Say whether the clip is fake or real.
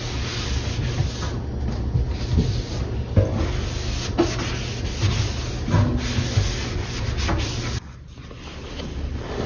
real